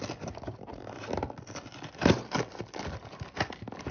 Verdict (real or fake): real